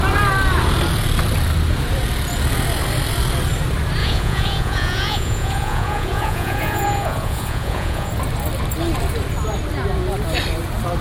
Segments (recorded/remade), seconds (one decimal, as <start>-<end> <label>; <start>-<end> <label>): 0.0-4.0 recorded; 4.0-8.1 remade; 8.1-11.0 recorded